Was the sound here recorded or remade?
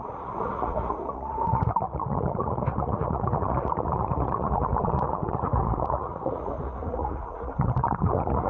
remade